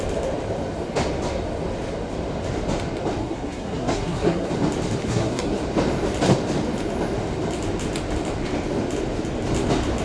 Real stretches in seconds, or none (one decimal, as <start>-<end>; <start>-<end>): 0.0-3.2; 4.5-5.0; 5.6-10.0